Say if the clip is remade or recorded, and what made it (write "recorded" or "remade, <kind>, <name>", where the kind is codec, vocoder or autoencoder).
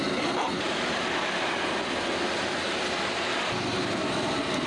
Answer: recorded